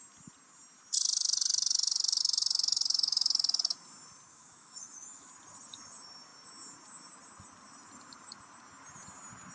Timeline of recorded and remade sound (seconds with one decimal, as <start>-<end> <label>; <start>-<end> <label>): 0.0-4.3 recorded; 4.3-5.3 remade; 5.3-9.5 recorded